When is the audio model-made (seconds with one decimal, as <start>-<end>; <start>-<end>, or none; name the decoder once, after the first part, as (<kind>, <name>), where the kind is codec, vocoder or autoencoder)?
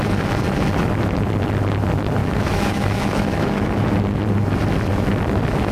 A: 2.2-3.7 (autoencoder, DAC-VAE)